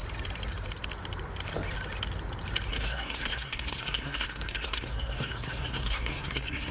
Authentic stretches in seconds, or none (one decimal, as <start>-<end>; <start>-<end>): 0.0-2.7